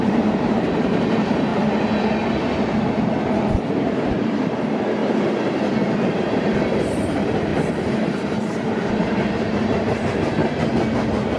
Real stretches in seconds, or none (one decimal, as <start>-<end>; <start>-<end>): 1.5-3.7; 5.0-6.1; 10.4-11.4